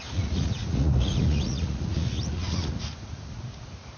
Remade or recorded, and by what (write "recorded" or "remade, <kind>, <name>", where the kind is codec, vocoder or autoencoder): remade, vocoder, Vocos